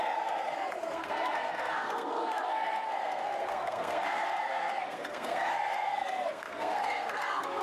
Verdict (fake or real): fake